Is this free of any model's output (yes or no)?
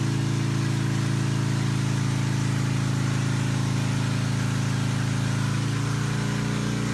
yes